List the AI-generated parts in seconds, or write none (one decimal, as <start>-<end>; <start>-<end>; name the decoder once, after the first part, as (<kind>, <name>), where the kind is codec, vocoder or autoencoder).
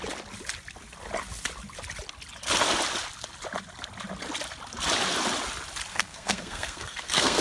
5.9-7.4 (codec, SNAC)